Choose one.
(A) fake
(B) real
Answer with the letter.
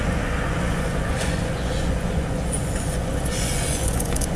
A